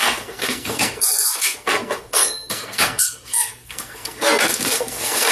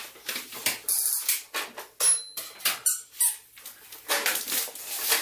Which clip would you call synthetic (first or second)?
first